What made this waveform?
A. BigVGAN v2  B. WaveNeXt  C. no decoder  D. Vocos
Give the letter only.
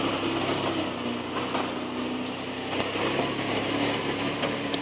C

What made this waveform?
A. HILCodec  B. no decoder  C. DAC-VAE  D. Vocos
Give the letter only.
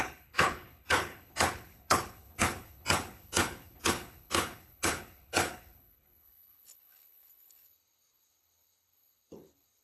A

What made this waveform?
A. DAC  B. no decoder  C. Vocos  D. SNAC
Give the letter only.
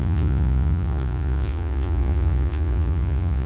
C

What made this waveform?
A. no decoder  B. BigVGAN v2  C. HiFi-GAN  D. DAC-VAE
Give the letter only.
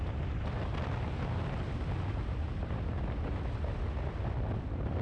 A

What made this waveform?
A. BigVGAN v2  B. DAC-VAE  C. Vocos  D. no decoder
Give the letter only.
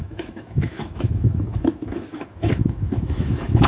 B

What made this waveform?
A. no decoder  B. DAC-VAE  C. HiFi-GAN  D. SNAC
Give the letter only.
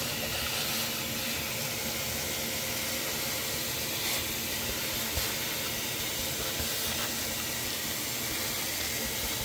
A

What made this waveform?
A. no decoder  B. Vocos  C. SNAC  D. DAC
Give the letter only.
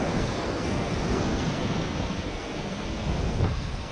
C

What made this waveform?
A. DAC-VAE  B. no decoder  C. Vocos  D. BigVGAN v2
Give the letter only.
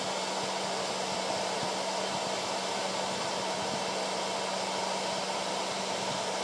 B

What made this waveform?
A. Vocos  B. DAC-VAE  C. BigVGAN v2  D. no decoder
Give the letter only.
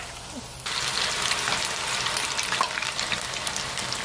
C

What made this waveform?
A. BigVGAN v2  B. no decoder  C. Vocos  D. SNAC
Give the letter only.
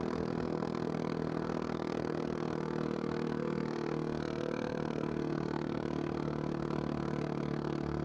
D